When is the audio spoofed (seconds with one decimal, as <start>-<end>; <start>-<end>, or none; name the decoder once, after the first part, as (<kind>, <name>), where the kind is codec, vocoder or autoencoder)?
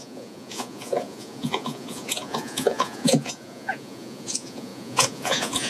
0.0-5.7 (vocoder, Vocos)